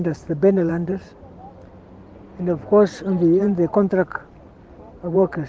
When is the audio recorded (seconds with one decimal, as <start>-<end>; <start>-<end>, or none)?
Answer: 1.1-3.4